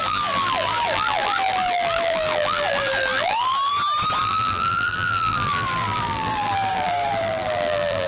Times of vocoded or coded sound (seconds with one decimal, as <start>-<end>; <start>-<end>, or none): 0.0-3.7; 4.2-8.1